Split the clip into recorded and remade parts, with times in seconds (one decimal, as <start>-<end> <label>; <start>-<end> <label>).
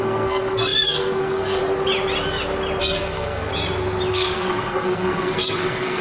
0.0-1.6 remade; 1.6-2.8 recorded; 2.8-3.5 remade; 3.5-4.1 recorded; 4.1-6.0 remade